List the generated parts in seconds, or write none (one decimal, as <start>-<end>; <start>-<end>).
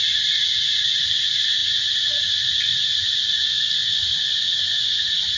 none